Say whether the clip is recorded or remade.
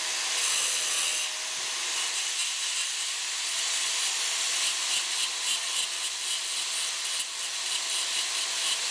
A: recorded